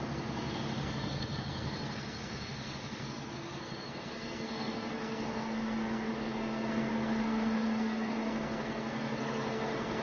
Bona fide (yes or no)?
no